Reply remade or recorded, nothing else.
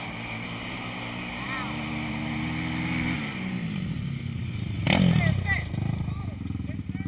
recorded